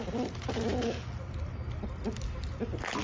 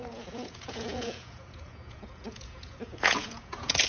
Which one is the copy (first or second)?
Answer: second